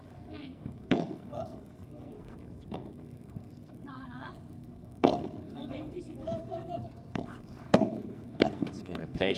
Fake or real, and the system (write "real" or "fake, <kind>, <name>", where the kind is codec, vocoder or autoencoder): fake, codec, SNAC